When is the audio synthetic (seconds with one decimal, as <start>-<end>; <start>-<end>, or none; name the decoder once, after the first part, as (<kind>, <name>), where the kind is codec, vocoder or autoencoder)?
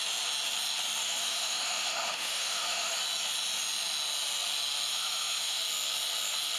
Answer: 1.0-2.9 (autoencoder, DAC-VAE); 4.9-5.6